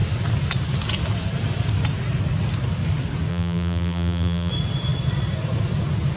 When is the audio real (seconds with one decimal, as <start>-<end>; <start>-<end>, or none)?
0.0-3.3; 4.5-6.2